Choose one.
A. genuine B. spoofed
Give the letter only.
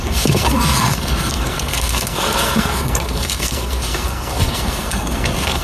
B